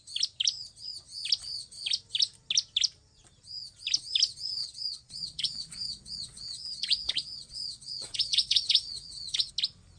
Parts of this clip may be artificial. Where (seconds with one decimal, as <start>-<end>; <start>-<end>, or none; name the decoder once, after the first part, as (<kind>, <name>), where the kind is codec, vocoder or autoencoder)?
4.6-9.5 (vocoder, Vocos)